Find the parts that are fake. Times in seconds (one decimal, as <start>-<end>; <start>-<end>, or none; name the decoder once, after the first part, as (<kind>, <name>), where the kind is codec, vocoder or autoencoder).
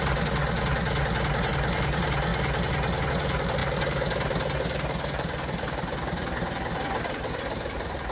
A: 0.0-0.4 (vocoder, BigVGAN v2); 1.3-2.3; 3.1-8.1